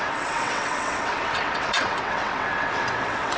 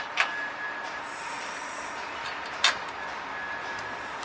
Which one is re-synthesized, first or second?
first